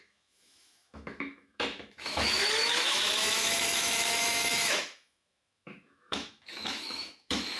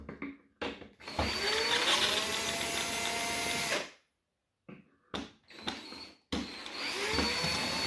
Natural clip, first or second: second